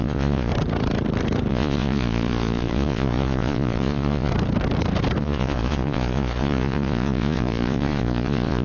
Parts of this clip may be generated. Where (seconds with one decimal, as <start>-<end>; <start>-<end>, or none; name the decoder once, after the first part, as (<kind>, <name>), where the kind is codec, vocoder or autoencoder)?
0.0-0.5 (vocoder, Vocos); 1.5-4.3; 5.2-8.6